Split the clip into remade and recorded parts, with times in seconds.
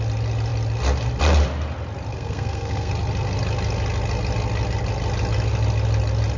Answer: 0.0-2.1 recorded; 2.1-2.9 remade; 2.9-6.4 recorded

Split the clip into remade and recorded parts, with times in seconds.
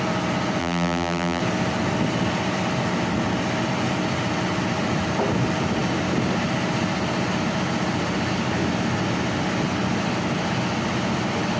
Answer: 0.0-0.6 recorded; 0.6-1.4 remade; 1.4-11.6 recorded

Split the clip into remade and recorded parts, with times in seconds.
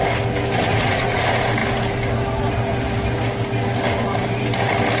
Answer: 0.0-0.7 recorded; 0.7-1.2 remade; 1.2-5.0 recorded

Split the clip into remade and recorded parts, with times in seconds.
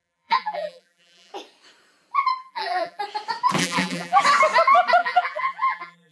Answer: 0.0-1.3 remade; 1.3-2.4 recorded; 2.4-3.0 remade; 3.0-3.6 recorded; 3.6-4.2 remade; 4.2-5.0 recorded; 5.0-6.1 remade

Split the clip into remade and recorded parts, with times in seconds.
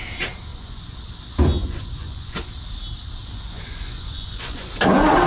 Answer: 0.0-0.5 recorded; 0.5-1.0 remade; 1.0-1.6 recorded; 1.6-2.5 remade; 2.5-3.2 recorded; 3.2-4.7 remade; 4.7-5.3 recorded